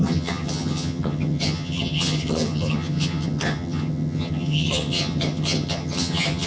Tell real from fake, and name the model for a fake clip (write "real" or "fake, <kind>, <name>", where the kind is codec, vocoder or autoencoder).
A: fake, vocoder, HiFi-GAN